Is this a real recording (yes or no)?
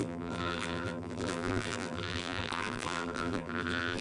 no